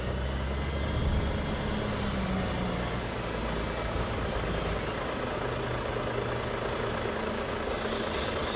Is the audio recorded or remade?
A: recorded